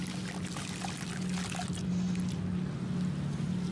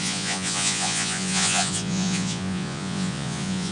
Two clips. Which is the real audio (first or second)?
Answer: first